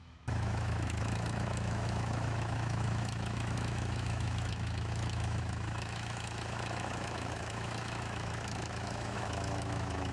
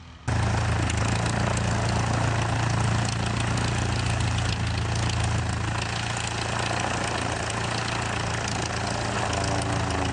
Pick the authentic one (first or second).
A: second